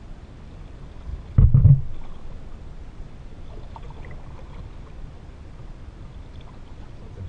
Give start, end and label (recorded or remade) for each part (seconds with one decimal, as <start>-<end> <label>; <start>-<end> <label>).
0.0-7.3 recorded